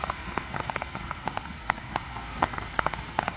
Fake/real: fake